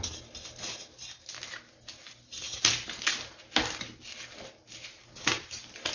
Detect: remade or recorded recorded